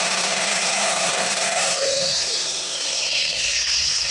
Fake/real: fake